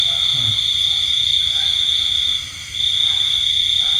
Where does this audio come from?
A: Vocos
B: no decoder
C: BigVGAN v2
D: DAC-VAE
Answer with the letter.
B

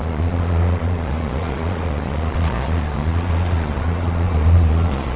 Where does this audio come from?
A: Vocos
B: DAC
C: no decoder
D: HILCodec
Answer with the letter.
A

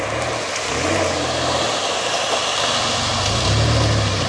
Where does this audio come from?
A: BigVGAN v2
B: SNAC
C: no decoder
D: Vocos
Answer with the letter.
C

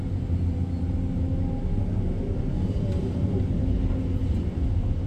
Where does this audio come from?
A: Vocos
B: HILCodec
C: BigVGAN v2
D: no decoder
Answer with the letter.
D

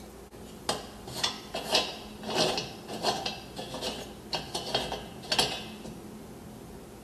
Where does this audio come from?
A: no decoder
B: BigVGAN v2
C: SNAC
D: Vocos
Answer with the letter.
A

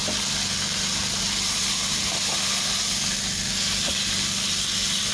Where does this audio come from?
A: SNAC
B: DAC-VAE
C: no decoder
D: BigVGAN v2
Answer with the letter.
C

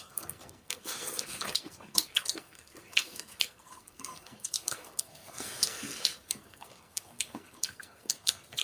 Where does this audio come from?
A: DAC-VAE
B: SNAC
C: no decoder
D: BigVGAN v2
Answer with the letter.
B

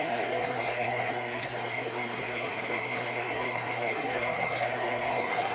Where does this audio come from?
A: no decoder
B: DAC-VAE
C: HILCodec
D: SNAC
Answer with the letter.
D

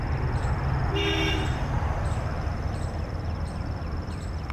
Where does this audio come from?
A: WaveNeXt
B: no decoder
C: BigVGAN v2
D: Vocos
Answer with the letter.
B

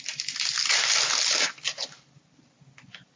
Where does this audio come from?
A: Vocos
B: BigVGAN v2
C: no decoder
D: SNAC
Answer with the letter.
C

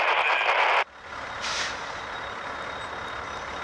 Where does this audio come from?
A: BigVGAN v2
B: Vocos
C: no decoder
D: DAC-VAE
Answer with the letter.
C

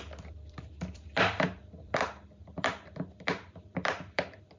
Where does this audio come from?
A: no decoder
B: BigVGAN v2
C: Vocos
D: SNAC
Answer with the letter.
B